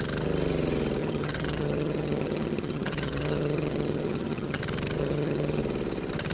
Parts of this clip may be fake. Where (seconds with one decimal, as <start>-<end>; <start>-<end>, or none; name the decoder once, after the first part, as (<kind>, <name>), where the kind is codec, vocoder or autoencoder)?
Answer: 1.0-4.6 (vocoder, HiFi-GAN); 5.0-5.6